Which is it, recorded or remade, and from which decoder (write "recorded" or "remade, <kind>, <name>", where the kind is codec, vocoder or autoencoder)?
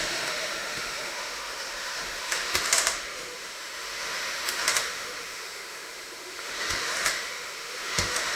remade, autoencoder, DAC-VAE